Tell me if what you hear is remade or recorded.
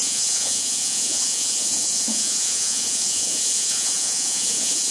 remade